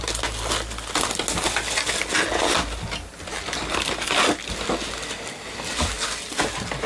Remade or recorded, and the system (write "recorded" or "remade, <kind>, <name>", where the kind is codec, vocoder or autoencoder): recorded